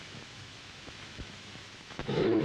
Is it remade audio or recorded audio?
remade